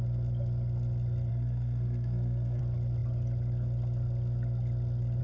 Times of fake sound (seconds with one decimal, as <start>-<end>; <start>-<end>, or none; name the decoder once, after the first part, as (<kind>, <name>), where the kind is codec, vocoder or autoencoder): 1.3-2.6 (codec, SNAC)